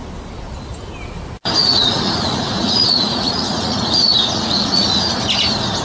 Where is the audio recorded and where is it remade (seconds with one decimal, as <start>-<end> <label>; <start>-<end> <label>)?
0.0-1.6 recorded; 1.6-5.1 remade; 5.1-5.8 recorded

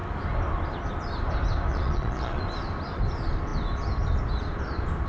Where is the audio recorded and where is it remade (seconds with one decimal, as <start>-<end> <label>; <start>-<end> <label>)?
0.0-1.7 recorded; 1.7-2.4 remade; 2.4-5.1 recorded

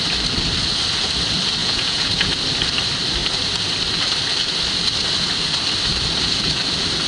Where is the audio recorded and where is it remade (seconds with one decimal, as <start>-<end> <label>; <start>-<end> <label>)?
0.0-1.6 recorded; 1.6-2.3 remade; 2.3-7.1 recorded

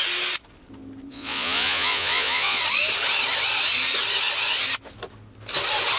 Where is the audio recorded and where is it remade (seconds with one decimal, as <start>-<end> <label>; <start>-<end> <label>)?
0.0-1.1 recorded; 1.1-2.6 remade; 2.6-6.0 recorded

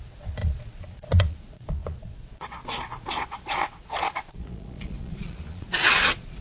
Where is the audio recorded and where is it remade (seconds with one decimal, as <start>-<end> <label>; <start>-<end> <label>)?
0.0-6.4 remade